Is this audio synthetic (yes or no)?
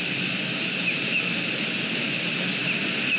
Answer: no